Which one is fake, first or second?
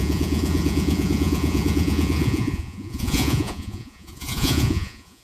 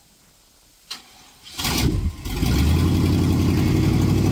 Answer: first